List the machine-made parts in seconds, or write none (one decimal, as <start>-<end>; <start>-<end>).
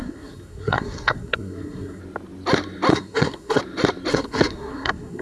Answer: 0.0-2.0; 2.9-3.6; 4.1-5.2